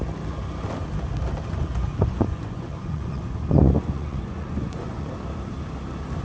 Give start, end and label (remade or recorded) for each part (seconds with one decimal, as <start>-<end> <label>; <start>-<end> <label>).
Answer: 0.0-1.6 recorded; 1.6-5.1 remade; 5.1-6.2 recorded